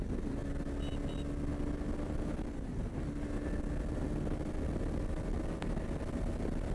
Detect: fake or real real